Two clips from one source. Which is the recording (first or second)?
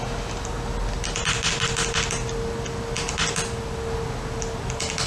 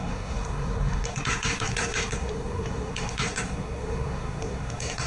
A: first